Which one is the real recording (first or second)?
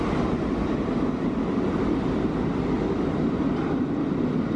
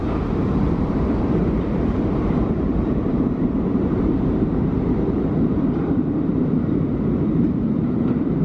first